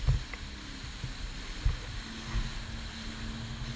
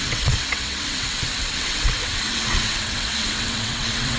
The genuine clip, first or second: first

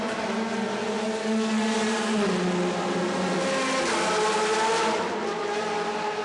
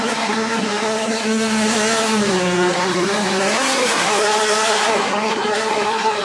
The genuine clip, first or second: first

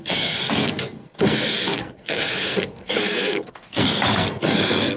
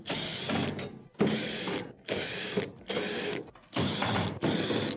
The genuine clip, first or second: second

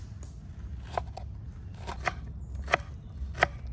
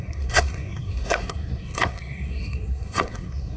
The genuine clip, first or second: first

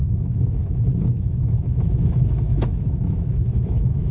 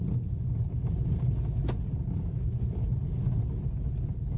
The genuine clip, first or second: second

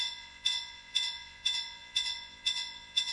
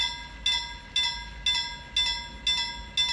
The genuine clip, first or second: second